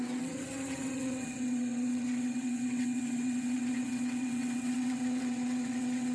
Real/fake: fake